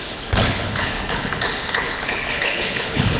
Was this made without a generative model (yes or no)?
no